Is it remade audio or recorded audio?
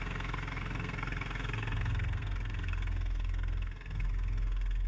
remade